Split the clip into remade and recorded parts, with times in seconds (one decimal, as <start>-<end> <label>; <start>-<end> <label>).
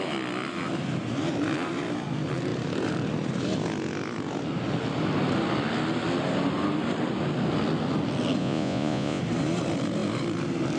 0.0-8.4 recorded; 8.4-9.2 remade; 9.2-10.8 recorded